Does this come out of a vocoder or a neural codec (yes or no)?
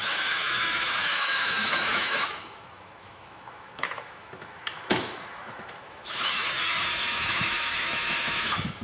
yes